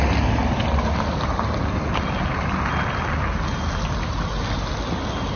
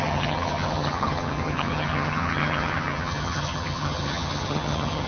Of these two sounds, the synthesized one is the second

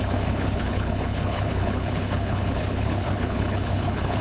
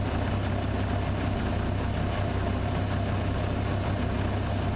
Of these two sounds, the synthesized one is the first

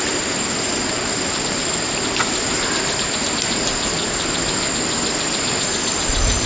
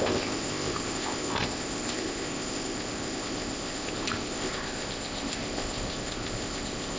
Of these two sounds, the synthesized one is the second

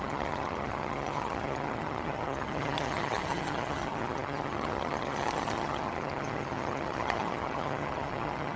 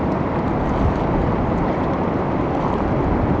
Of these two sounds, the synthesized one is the first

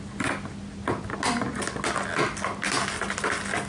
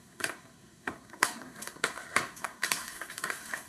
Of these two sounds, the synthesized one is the second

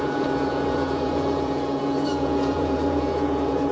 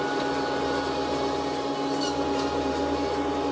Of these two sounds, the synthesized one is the first